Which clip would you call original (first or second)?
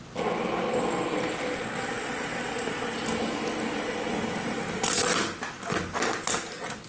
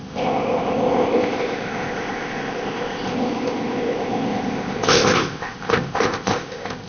first